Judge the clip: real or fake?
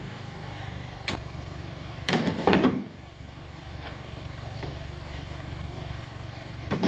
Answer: fake